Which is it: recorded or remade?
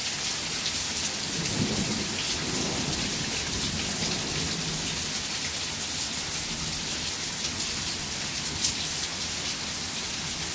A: recorded